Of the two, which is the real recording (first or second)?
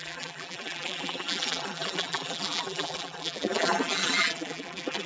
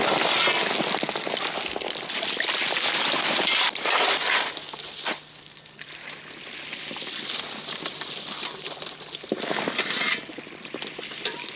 second